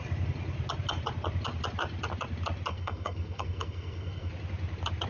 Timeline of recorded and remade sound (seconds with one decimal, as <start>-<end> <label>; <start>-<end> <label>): 0.0-2.7 recorded; 2.7-4.3 remade; 4.3-5.1 recorded